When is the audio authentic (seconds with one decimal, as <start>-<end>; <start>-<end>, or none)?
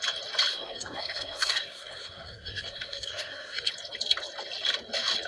0.0-0.5; 3.7-5.3